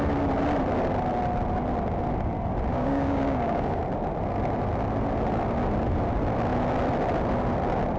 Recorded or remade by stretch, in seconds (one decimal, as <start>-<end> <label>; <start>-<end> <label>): 0.0-2.7 recorded; 2.7-3.8 remade; 3.8-8.0 recorded